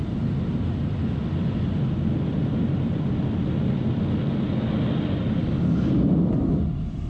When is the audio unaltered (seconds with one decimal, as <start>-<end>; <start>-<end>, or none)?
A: 0.0-7.1